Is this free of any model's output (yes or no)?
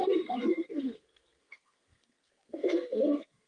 no